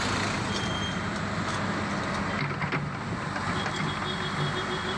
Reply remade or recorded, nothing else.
recorded